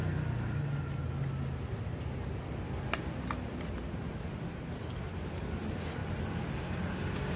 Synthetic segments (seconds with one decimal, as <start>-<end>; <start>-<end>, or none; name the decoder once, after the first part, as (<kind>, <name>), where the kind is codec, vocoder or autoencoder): none